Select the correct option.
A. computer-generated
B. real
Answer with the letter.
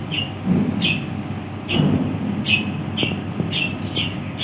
B